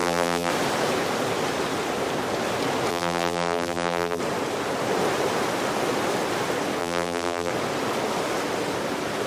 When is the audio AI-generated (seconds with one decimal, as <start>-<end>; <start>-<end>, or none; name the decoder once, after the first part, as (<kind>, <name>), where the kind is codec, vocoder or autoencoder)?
0.0-0.5 (vocoder, BigVGAN v2); 2.9-4.2; 6.8-7.5